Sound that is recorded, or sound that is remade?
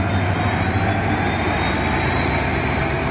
recorded